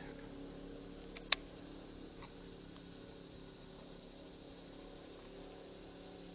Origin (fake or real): real